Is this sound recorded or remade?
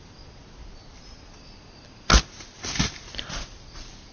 recorded